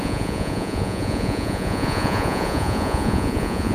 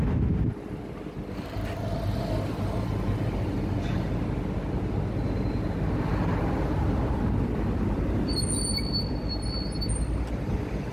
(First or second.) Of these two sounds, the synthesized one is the first